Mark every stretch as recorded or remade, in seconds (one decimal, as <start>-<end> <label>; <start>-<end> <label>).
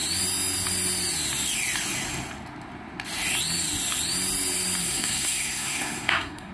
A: 0.0-4.8 recorded; 4.8-6.5 remade